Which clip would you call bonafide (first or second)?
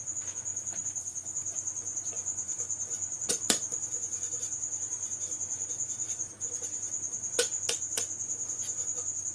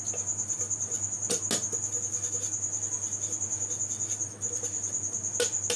second